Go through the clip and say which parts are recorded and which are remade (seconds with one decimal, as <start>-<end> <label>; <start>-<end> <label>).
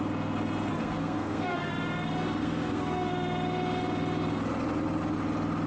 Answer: 0.0-0.8 recorded; 0.8-1.7 remade; 1.7-2.4 recorded; 2.4-3.1 remade; 3.1-5.7 recorded